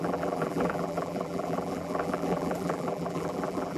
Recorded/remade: remade